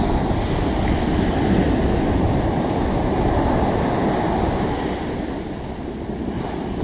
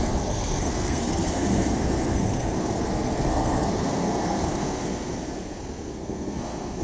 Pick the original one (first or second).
first